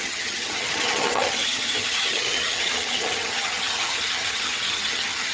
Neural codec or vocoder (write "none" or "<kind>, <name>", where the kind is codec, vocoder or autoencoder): vocoder, HiFi-GAN